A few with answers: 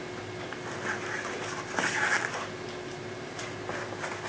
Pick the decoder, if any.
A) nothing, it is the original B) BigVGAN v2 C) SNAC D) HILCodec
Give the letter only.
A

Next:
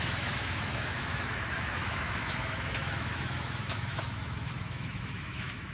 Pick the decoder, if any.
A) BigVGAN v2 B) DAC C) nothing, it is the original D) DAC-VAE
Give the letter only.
D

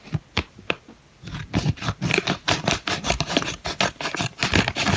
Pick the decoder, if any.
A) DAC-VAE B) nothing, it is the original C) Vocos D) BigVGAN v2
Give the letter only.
B